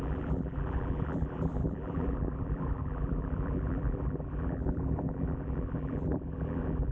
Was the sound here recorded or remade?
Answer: remade